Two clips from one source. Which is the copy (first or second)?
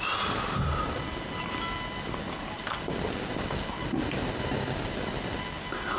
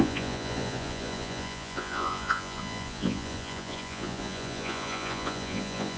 second